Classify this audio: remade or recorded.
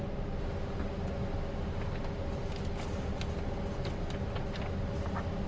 recorded